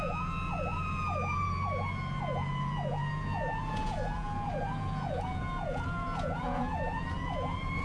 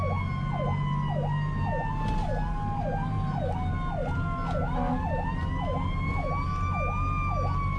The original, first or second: second